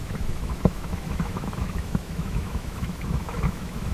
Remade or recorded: remade